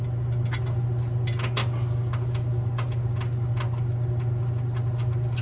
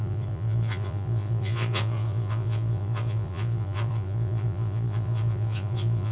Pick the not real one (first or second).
second